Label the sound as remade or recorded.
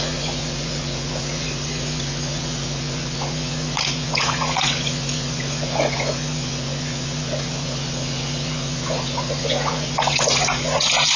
remade